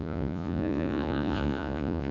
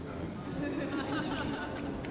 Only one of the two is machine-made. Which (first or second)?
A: first